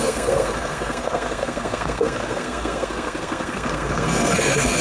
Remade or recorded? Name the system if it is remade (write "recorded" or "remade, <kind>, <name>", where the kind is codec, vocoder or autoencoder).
remade, codec, SNAC